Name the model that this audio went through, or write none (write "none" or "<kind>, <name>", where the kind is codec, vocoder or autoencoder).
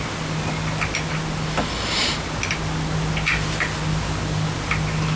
none